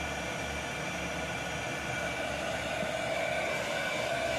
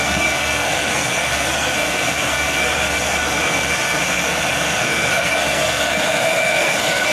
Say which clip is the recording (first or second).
first